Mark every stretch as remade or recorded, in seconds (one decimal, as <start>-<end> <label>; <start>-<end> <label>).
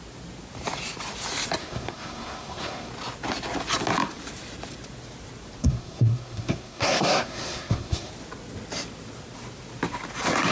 0.0-1.6 recorded; 1.6-2.9 remade; 2.9-5.6 recorded; 5.6-8.1 remade; 8.1-10.5 recorded